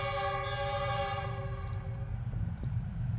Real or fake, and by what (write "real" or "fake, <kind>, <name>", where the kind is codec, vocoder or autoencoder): fake, vocoder, BigVGAN v2